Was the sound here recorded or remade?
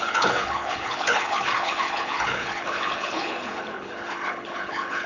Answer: remade